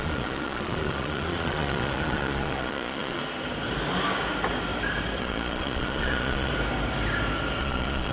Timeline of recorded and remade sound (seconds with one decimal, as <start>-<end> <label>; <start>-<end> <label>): 0.0-3.2 remade; 3.2-5.2 recorded; 5.2-6.5 remade; 6.5-7.6 recorded; 7.6-8.1 remade